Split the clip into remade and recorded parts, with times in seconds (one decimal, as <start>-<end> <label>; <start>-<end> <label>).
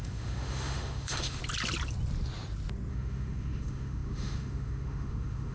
0.0-1.4 remade; 1.4-2.9 recorded; 2.9-5.5 remade